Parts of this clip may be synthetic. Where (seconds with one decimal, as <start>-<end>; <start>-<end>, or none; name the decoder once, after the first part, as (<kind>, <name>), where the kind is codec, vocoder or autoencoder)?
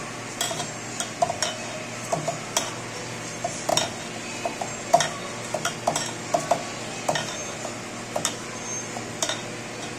none